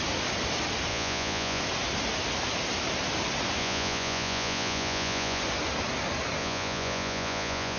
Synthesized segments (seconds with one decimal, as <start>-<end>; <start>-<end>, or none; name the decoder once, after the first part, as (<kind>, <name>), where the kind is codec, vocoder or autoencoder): 0.9-1.6 (vocoder, Vocos); 3.6-5.4; 6.4-7.8